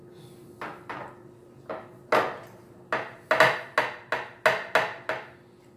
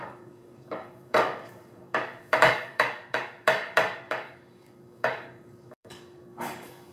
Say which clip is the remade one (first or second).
second